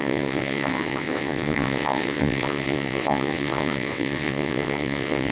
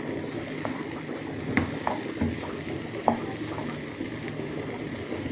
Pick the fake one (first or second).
first